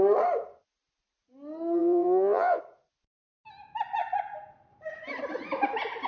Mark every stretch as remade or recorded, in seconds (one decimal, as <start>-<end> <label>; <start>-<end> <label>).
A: 0.0-1.8 recorded; 1.8-2.6 remade; 2.6-6.1 recorded